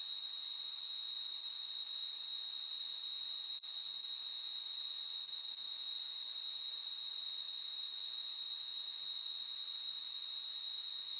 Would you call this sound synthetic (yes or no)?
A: yes